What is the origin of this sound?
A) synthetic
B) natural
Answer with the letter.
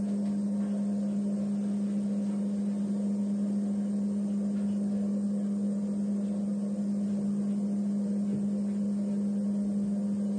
B